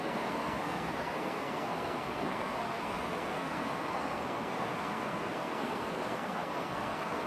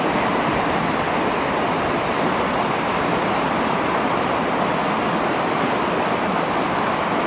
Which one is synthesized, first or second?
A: first